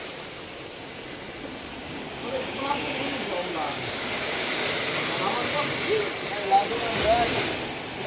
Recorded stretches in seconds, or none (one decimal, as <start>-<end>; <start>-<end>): 0.0-1.8; 4.5-8.1